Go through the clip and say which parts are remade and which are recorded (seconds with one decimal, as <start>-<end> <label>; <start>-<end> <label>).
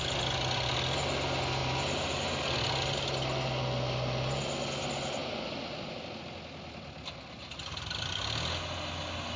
0.0-9.4 recorded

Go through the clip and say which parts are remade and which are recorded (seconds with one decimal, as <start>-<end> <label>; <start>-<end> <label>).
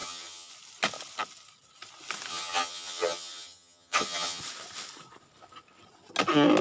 0.0-0.5 remade; 0.5-2.3 recorded; 2.3-4.4 remade; 4.4-6.6 recorded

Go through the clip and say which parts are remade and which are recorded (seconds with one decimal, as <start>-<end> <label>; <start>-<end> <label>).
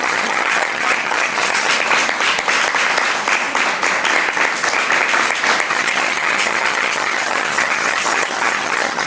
0.0-1.7 remade; 1.7-5.7 recorded; 5.7-9.1 remade